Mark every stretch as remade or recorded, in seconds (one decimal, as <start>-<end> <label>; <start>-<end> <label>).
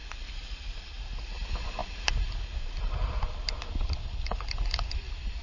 0.0-5.4 recorded